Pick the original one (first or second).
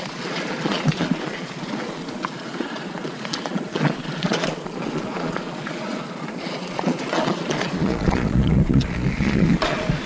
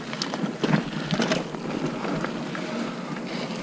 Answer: second